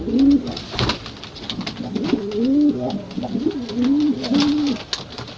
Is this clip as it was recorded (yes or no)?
yes